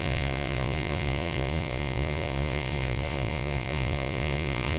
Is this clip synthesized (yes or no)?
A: yes